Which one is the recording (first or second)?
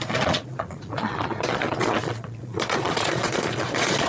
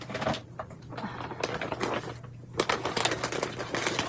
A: second